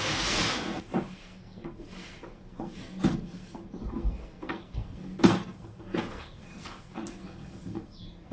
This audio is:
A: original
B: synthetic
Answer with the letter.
B